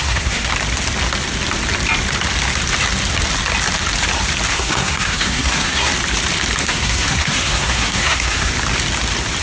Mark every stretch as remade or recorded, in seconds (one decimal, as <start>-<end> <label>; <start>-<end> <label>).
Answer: 0.0-0.5 remade; 0.5-4.5 recorded; 4.5-5.9 remade; 5.9-6.6 recorded; 6.6-8.5 remade; 8.5-9.4 recorded

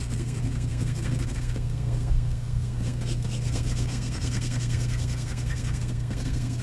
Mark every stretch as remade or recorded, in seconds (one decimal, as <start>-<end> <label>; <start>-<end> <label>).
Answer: 0.0-6.6 remade

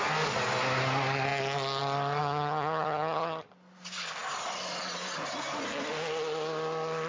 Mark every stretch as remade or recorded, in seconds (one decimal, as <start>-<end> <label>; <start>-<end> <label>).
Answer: 0.0-2.2 recorded; 2.2-3.5 remade; 3.5-7.1 recorded

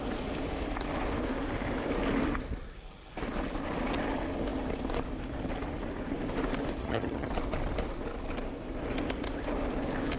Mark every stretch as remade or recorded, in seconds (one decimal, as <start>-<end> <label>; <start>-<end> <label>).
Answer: 0.0-6.8 recorded; 6.8-7.3 remade; 7.3-10.2 recorded

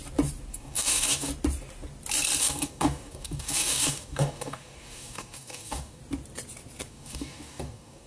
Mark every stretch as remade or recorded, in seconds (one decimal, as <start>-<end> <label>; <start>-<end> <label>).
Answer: 0.0-0.5 recorded; 0.5-1.3 remade; 1.3-2.4 recorded; 2.4-6.0 remade; 6.0-6.9 recorded; 6.9-8.1 remade

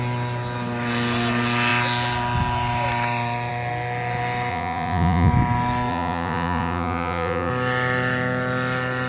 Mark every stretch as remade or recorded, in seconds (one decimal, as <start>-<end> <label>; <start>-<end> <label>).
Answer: 0.0-4.5 recorded; 4.5-5.3 remade; 5.3-5.9 recorded; 5.9-7.5 remade; 7.5-9.1 recorded